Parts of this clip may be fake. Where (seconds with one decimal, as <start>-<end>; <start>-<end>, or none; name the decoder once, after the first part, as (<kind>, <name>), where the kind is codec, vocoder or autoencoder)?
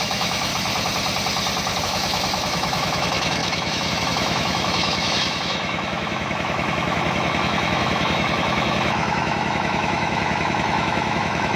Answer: 0.0-0.5 (autoencoder, DAC-VAE); 1.8-11.6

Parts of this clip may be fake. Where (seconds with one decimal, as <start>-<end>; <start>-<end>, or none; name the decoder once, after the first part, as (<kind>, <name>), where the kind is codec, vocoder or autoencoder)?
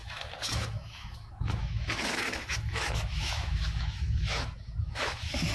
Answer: 0.0-5.5 (autoencoder, DAC-VAE)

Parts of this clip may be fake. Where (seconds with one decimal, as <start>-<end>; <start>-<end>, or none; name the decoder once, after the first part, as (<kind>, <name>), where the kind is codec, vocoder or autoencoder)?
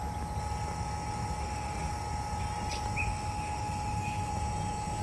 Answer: 1.4-1.9 (autoencoder, DAC-VAE); 3.1-4.3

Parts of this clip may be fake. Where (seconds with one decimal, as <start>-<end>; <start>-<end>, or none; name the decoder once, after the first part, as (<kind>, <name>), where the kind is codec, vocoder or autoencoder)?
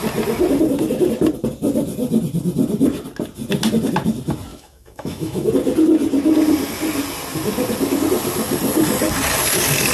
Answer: 4.5-5.5 (autoencoder, DAC-VAE)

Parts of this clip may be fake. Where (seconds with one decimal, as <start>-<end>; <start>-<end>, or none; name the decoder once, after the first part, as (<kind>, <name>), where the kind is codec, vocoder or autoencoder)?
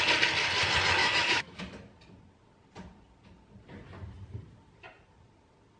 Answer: 1.0-1.6 (autoencoder, DAC-VAE)